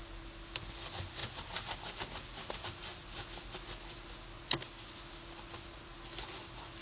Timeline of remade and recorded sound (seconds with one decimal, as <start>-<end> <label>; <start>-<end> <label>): 0.0-6.8 recorded